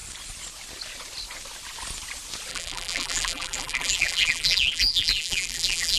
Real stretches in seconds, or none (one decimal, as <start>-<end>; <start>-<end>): 0.0-2.5